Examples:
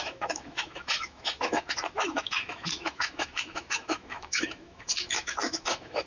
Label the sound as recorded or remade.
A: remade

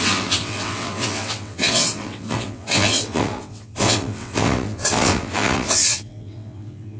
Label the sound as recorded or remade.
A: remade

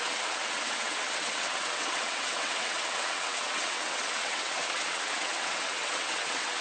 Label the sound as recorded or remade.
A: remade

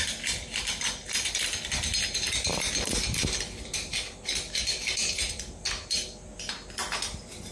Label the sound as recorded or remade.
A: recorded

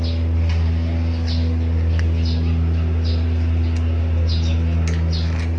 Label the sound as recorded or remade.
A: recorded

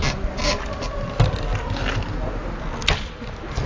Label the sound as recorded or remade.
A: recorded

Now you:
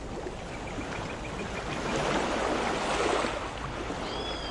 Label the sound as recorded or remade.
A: recorded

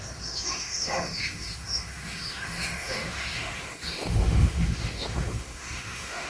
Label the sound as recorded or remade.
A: remade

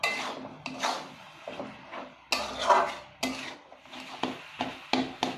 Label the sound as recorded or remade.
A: recorded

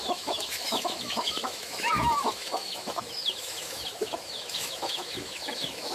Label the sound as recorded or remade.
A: remade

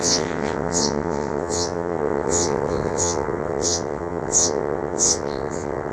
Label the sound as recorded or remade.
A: remade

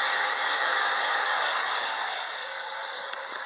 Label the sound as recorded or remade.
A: remade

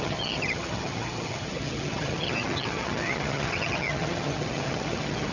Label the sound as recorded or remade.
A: remade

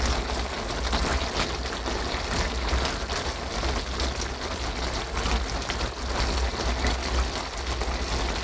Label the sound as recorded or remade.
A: recorded